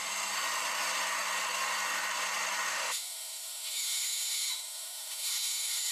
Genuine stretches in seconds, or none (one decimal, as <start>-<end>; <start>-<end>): 0.0-2.7